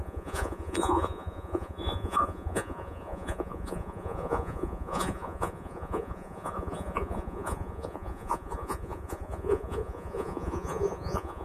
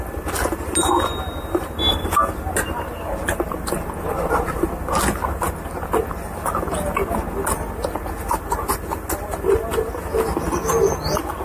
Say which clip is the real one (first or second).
second